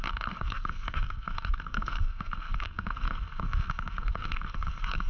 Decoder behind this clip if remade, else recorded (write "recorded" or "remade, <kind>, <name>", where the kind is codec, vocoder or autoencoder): remade, codec, SNAC